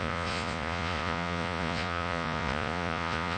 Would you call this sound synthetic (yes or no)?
yes